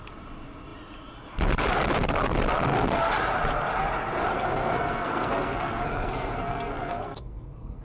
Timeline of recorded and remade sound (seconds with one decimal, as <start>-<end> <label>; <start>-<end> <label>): 0.0-4.3 recorded; 4.3-7.8 remade

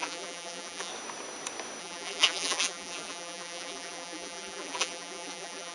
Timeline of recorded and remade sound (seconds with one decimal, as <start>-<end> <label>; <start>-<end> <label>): 0.0-0.9 remade; 0.9-1.8 recorded; 1.8-5.7 remade

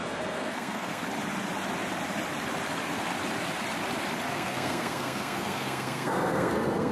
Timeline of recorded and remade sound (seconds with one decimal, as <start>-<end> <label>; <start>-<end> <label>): 0.0-1.0 remade; 1.0-4.3 recorded; 4.3-6.9 remade

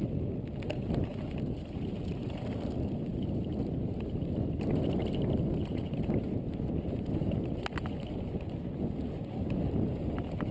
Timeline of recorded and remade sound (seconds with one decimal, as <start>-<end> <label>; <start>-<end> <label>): 0.0-3.5 recorded; 3.5-5.1 remade; 5.1-10.5 recorded

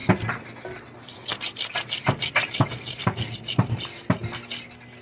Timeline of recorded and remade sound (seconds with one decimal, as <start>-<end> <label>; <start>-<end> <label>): 0.0-5.0 recorded

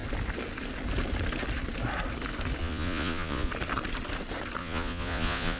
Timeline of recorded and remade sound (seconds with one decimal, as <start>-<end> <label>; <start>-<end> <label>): 0.0-2.6 recorded; 2.6-3.5 remade; 3.5-4.6 recorded; 4.6-5.6 remade

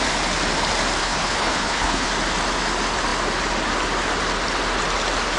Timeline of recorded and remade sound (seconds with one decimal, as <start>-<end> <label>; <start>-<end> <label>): 0.0-1.0 recorded; 1.0-2.1 remade; 2.1-5.4 recorded